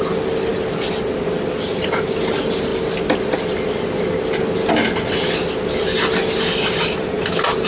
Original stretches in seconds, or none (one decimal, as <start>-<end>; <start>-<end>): 0.0-7.7